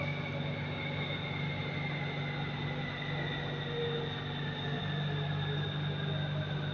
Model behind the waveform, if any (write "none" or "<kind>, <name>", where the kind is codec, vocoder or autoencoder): none